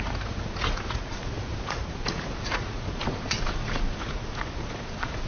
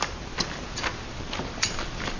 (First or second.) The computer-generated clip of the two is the first